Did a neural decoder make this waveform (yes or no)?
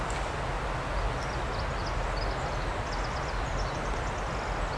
no